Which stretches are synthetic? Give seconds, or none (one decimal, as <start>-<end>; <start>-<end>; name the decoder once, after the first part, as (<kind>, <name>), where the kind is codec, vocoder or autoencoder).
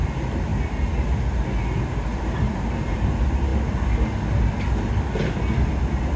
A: 2.1-3.1 (vocoder, BigVGAN v2)